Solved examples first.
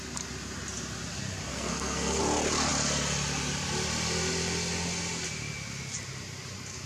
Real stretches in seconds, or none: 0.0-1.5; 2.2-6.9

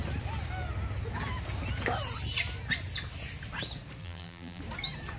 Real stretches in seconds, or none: 0.0-4.0; 4.6-5.2

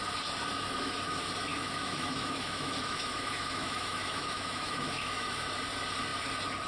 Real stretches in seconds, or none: 0.0-1.5; 5.5-6.7

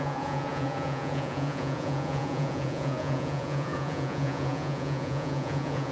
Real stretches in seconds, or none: none